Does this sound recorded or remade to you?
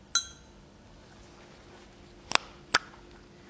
recorded